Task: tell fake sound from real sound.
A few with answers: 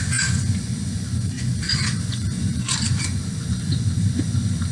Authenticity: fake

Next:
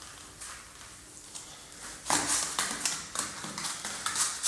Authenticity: real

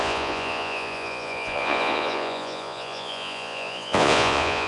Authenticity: fake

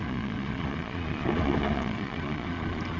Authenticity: fake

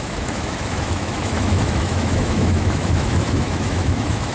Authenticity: fake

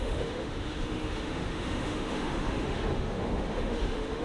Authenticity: fake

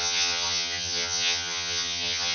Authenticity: fake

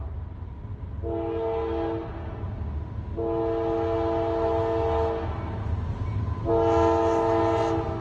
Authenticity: real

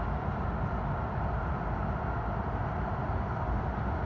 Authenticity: real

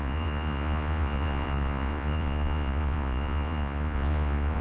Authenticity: fake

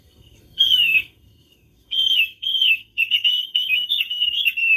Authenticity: fake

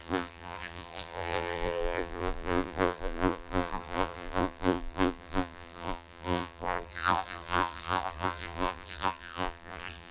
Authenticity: fake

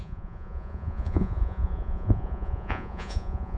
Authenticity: fake